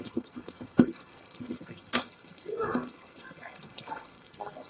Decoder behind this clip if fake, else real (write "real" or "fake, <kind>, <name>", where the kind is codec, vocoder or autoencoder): fake, codec, SNAC